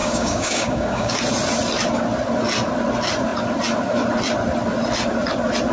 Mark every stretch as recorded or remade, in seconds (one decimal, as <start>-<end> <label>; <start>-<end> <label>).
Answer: 0.0-1.2 remade; 1.2-5.7 recorded